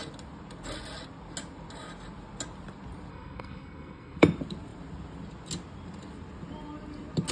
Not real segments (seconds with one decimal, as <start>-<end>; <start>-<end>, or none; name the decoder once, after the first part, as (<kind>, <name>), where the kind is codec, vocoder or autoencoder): 3.1-4.2 (codec, SNAC)